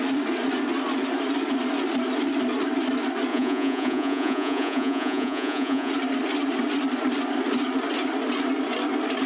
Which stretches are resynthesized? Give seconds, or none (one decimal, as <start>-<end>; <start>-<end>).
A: 3.3-5.9